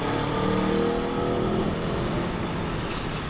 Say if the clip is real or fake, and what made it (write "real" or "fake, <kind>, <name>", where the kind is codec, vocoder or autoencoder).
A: real